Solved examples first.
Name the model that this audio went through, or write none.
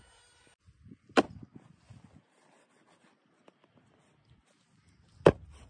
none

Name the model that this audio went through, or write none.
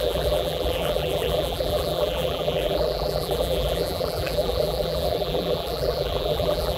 vocoder, BigVGAN v2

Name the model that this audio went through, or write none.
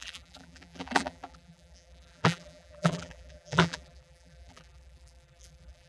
vocoder, BigVGAN v2